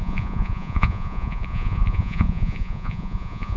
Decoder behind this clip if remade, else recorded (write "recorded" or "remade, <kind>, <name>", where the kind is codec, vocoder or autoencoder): remade, vocoder, Vocos